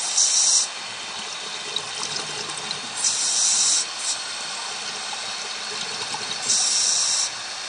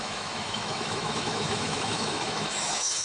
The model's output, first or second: second